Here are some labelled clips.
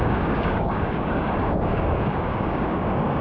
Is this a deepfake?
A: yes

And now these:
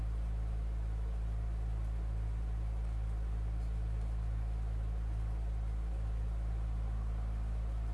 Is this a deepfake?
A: no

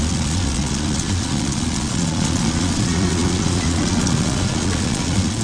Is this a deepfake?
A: yes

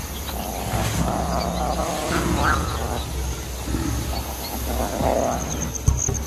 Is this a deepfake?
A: no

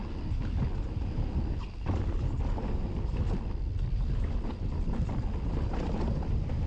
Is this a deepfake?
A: no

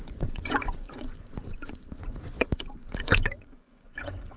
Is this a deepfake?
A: yes